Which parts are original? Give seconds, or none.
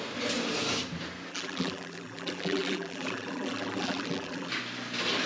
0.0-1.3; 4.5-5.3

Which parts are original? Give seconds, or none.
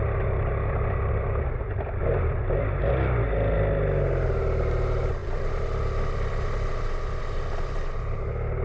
0.0-8.6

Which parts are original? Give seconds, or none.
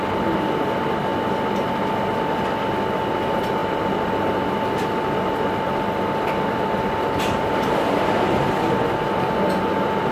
0.0-10.1